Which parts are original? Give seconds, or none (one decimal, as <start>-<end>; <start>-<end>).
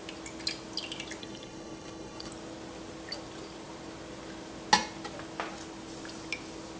0.0-1.2; 2.3-6.8